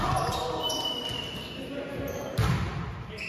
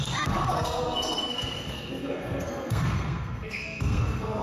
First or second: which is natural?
first